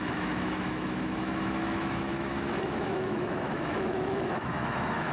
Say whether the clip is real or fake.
fake